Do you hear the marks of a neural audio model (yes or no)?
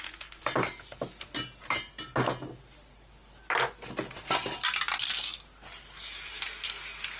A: no